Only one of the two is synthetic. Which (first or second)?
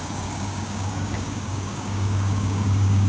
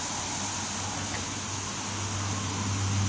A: first